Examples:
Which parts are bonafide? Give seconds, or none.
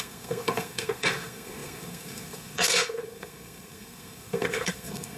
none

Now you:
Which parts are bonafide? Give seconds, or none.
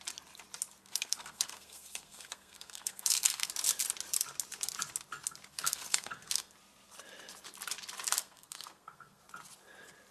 0.0-0.8; 3.5-5.5; 6.5-8.2; 9.2-10.1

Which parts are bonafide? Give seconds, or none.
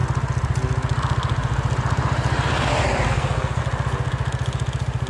0.0-3.1; 3.6-5.1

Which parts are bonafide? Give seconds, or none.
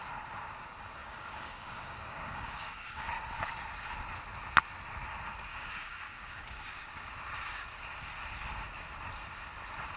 0.0-1.0; 3.1-5.5; 6.9-10.0